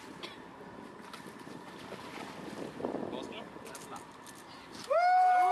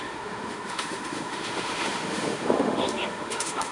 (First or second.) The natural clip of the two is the first